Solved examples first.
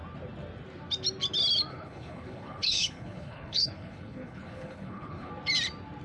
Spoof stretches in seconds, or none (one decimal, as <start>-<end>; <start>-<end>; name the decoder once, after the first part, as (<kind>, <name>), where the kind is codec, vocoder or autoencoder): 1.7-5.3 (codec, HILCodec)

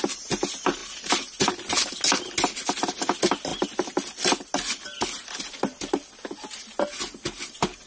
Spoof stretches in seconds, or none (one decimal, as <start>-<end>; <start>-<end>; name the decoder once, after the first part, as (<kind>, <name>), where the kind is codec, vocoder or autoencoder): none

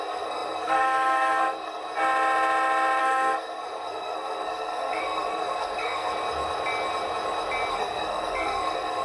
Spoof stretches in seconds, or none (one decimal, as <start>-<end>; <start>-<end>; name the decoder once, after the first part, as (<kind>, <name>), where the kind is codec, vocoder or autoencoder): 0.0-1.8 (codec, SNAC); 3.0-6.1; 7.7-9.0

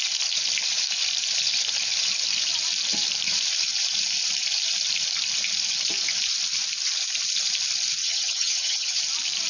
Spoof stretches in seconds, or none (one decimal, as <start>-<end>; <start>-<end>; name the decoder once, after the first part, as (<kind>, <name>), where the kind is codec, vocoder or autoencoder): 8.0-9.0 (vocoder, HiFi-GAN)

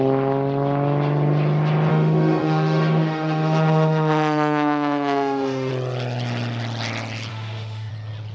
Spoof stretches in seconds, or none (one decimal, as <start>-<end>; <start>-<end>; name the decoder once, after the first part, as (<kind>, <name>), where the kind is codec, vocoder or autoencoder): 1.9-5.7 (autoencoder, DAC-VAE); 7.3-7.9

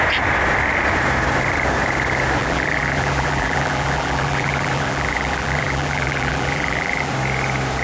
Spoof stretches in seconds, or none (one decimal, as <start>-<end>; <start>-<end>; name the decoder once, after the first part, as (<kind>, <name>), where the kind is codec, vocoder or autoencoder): 2.4-7.1 (vocoder, BigVGAN v2)